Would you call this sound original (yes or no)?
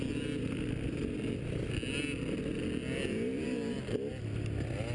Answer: yes